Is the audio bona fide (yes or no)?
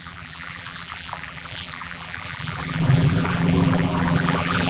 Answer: no